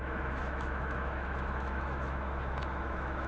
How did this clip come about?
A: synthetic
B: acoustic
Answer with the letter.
A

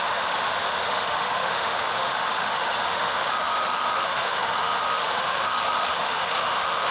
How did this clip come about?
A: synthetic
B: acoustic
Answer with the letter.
A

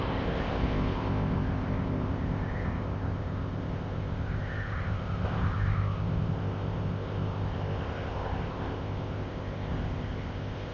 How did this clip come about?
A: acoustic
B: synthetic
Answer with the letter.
B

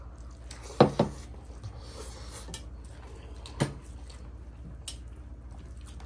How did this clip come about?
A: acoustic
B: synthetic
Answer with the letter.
A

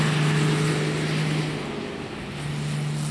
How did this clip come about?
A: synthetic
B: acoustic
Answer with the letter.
B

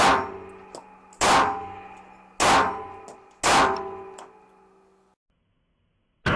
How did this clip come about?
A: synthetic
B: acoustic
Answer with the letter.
B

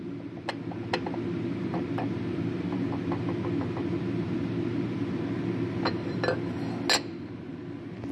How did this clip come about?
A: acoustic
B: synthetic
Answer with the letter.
A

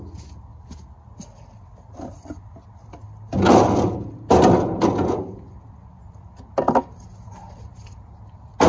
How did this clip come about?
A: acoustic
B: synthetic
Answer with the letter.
A